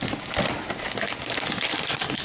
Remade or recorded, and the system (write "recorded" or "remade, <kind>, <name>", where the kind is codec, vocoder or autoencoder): recorded